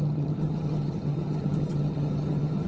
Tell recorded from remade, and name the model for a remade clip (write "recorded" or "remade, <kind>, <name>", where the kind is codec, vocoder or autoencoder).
remade, vocoder, HiFi-GAN